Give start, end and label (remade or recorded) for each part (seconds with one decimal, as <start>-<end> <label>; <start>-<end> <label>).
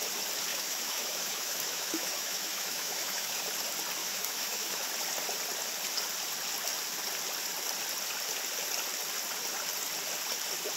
0.0-0.5 recorded; 0.5-3.4 remade; 3.4-4.0 recorded; 4.0-4.9 remade; 4.9-10.8 recorded